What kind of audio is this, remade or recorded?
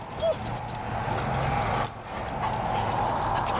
recorded